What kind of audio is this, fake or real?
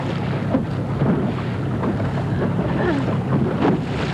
real